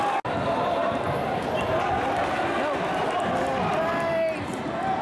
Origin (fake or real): real